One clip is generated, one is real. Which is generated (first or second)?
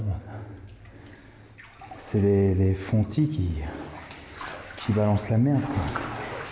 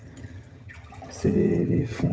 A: second